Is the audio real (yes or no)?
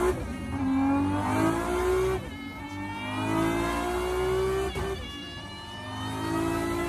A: yes